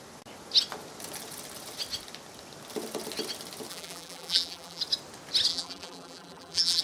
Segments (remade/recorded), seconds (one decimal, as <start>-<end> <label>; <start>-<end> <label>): 0.0-3.7 recorded; 3.7-4.8 remade; 4.8-5.5 recorded; 5.5-6.8 remade